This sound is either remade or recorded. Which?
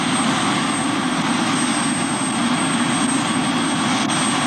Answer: recorded